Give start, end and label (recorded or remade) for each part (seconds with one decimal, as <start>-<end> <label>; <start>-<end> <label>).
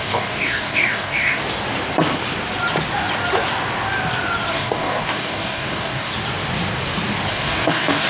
0.0-1.4 remade; 1.4-4.5 recorded; 4.5-6.1 remade; 6.1-7.3 recorded; 7.3-8.1 remade